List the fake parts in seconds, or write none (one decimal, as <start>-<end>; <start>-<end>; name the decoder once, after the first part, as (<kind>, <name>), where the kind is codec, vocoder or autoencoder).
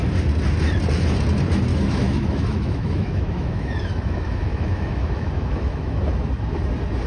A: 1.7-6.0 (autoencoder, DAC-VAE)